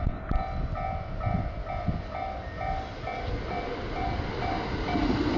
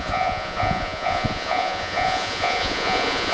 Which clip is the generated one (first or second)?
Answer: second